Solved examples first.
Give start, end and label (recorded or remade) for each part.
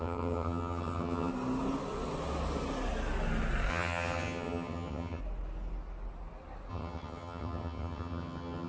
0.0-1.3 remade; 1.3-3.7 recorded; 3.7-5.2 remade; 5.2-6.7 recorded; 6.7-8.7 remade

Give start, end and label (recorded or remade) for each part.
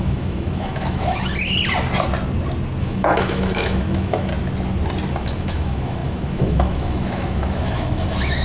0.0-1.3 remade; 1.3-2.8 recorded; 2.8-4.3 remade; 4.3-5.1 recorded; 5.1-8.4 remade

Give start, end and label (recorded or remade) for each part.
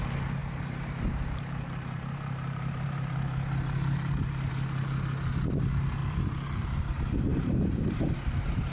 0.0-0.4 recorded; 0.4-4.5 remade; 4.5-6.0 recorded; 6.0-6.8 remade; 6.8-7.3 recorded; 7.3-8.1 remade; 8.1-8.7 recorded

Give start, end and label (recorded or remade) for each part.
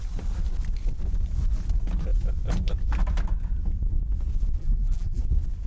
0.0-4.6 recorded; 4.6-5.2 remade; 5.2-5.7 recorded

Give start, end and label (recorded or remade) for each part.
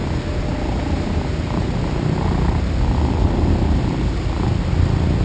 0.0-5.2 recorded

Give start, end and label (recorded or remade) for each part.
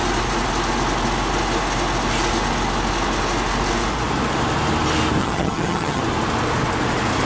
0.0-5.2 recorded; 5.2-6.0 remade; 6.0-7.2 recorded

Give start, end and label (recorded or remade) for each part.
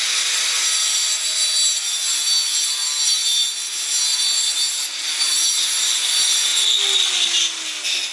0.0-8.1 recorded